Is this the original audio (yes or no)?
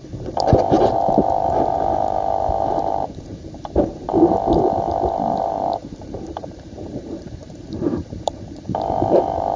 no